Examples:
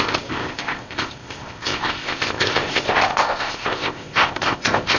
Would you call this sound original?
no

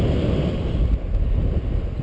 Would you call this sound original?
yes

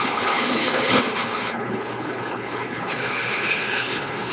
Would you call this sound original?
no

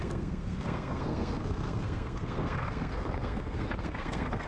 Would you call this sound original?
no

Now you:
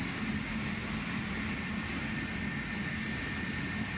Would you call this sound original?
yes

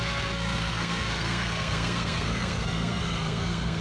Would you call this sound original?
no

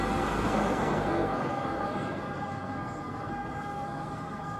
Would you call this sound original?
no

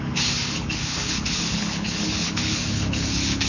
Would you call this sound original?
no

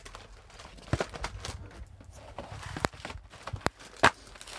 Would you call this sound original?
yes